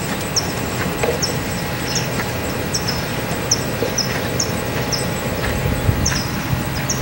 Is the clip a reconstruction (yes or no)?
no